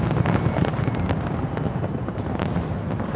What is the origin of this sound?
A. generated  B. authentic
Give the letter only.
B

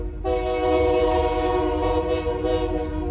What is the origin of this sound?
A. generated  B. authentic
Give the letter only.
B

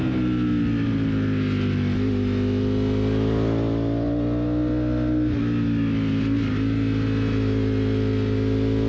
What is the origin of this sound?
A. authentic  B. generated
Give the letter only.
A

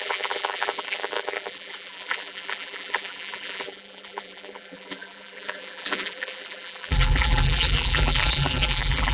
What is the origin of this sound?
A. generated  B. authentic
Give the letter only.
A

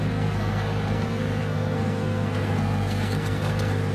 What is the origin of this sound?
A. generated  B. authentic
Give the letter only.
A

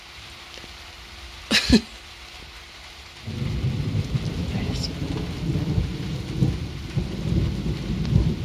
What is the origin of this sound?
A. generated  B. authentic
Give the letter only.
B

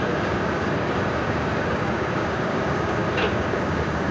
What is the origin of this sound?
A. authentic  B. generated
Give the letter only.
B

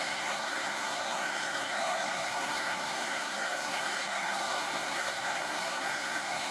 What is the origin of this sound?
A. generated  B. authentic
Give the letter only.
A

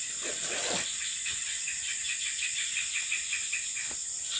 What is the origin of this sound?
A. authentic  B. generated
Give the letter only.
A